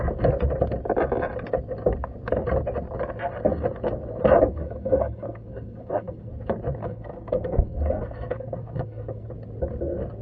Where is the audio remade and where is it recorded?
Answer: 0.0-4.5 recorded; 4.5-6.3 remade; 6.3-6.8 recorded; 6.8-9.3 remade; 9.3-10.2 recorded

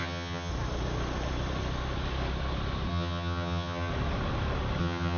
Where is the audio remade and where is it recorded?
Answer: 0.0-0.5 remade; 0.5-2.9 recorded; 2.9-3.9 remade; 3.9-4.8 recorded; 4.8-5.2 remade